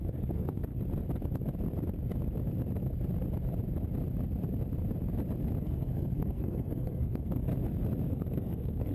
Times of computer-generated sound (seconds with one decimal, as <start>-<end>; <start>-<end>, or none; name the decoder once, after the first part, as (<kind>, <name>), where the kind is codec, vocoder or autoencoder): 0.0-0.7 (codec, SNAC); 5.6-7.5; 8.1-8.9